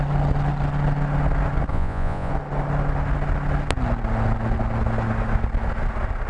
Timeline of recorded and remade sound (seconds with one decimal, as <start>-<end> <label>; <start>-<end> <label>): 0.0-1.7 recorded; 1.7-2.3 remade; 2.3-6.3 recorded